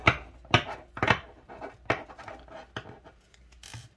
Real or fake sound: real